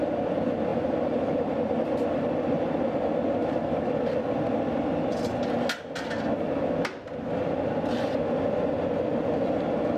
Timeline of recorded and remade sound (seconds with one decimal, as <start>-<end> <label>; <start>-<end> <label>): 0.0-0.7 recorded; 0.7-2.0 remade; 2.0-3.4 recorded; 3.4-3.9 remade; 3.9-10.0 recorded